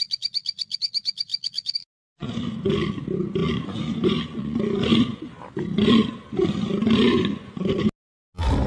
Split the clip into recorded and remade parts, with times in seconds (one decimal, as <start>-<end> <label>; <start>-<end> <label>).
0.0-3.4 recorded; 3.4-4.6 remade; 4.6-7.1 recorded; 7.1-7.8 remade; 7.8-8.7 recorded